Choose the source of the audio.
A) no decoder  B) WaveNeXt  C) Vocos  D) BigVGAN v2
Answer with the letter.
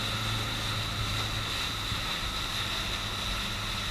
A